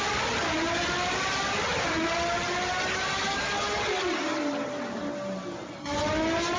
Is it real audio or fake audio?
real